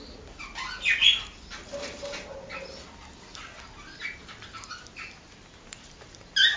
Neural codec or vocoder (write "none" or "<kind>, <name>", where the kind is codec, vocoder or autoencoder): none